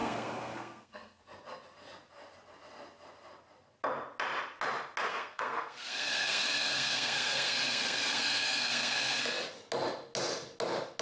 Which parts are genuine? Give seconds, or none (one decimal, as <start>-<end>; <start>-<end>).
1.2-5.1; 9.2-11.0